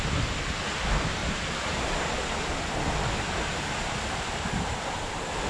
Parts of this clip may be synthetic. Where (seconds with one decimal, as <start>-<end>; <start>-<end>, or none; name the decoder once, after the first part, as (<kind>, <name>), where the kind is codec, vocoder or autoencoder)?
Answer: none